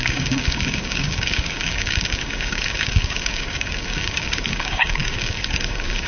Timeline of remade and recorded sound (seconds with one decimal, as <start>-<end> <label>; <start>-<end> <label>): 0.0-6.1 remade